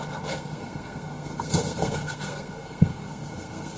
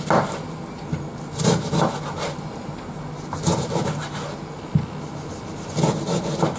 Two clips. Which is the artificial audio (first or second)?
first